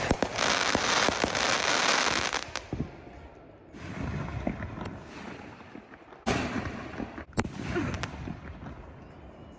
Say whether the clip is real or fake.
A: real